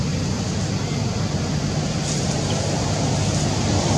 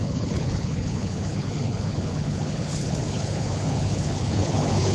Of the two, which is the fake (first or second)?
second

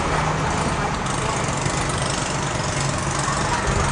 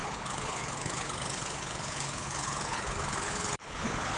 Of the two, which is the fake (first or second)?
second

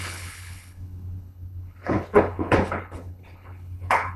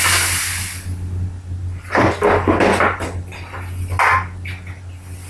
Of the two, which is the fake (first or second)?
first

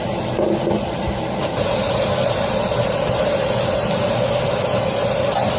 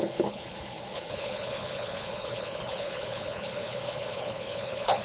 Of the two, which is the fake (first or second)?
second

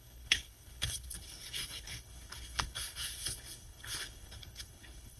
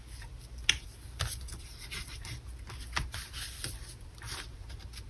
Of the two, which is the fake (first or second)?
first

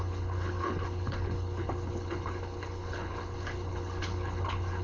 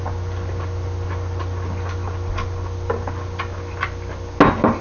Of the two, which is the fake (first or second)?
first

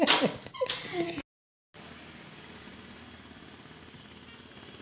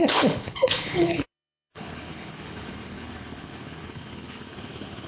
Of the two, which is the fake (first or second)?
second